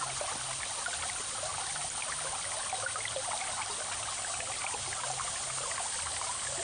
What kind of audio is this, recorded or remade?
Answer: recorded